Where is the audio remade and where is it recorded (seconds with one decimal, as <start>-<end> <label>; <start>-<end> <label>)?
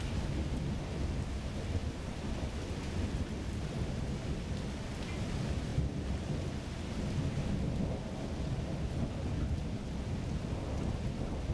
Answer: 0.0-11.5 recorded